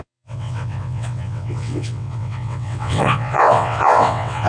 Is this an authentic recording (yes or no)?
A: no